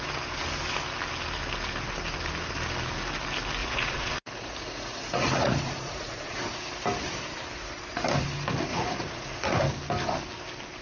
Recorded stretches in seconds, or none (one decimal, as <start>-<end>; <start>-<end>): 0.0-3.6; 6.5-8.7; 9.6-10.8